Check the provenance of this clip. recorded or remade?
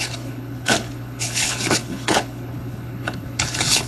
remade